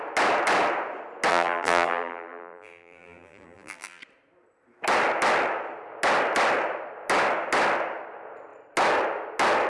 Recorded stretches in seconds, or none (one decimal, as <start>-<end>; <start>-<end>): 0.0-1.3; 4.0-9.7